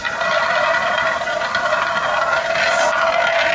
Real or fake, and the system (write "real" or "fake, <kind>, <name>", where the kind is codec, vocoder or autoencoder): real